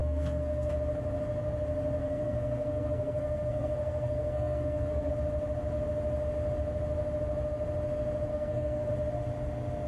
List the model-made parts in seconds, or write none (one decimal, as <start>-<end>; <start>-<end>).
0.0-0.7; 2.0-5.1; 8.3-8.9